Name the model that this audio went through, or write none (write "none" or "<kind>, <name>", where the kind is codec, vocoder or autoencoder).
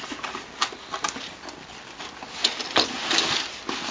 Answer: none